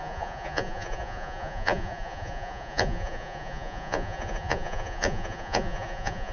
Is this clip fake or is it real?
fake